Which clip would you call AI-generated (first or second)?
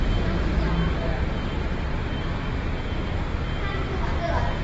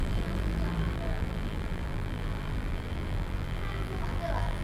second